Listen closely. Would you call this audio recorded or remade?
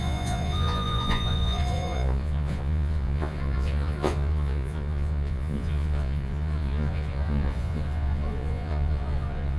remade